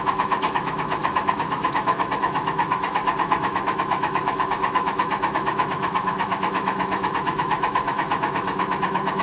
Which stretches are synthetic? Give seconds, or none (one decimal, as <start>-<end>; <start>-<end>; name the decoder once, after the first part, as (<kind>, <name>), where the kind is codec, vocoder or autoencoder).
0.0-9.2 (autoencoder, DAC-VAE)